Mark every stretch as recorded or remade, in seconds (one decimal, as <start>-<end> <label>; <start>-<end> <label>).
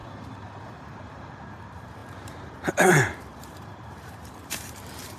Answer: 0.0-0.7 recorded; 0.7-5.2 remade